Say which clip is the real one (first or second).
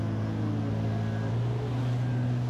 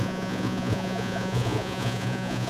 first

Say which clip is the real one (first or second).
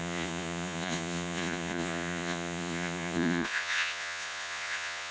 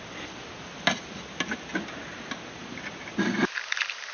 second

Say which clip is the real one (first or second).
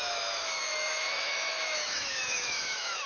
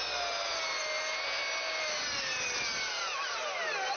second